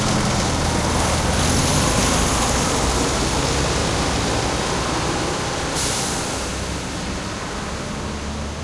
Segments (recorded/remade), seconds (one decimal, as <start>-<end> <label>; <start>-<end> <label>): 0.0-8.6 recorded